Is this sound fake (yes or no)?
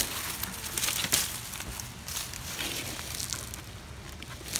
no